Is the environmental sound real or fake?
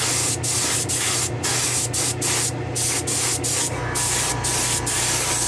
real